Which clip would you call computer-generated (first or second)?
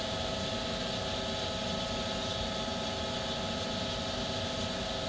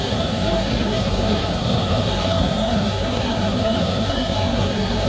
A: second